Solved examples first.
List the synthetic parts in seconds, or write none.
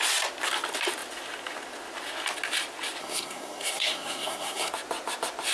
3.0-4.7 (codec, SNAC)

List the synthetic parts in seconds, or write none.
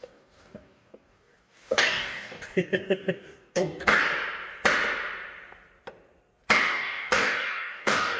0.0-4.0 (codec, DAC); 6.7-8.2